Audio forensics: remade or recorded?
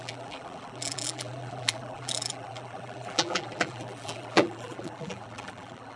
remade